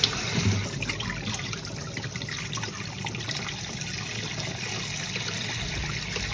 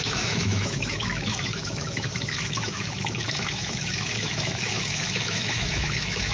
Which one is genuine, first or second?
first